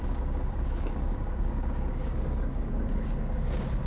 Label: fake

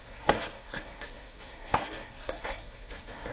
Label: fake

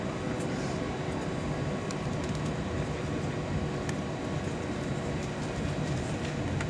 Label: real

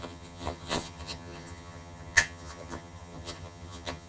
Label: fake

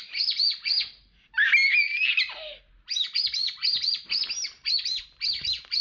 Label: real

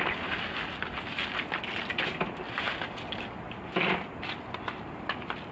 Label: real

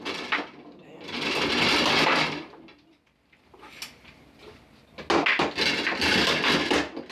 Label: real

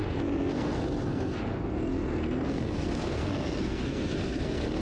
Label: fake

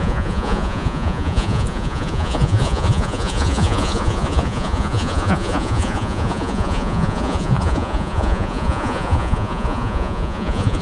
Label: fake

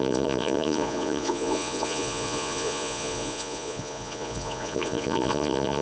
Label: fake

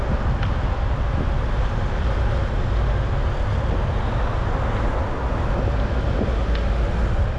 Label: real